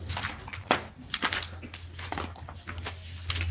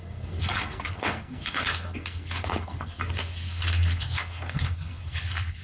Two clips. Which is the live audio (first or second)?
first